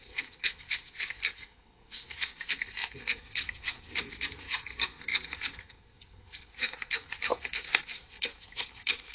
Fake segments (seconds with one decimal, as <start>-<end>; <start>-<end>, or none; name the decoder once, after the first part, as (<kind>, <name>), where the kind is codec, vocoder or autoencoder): 0.0-9.1 (codec, SNAC)